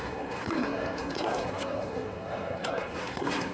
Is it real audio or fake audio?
fake